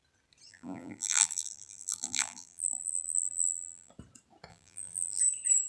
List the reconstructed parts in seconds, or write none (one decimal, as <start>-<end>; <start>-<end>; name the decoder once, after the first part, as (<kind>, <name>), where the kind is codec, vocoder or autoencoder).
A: 0.5-3.9 (vocoder, BigVGAN v2); 4.5-5.2